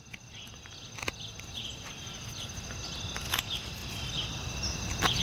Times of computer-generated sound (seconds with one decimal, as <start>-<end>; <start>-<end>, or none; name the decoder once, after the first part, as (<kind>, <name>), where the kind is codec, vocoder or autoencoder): none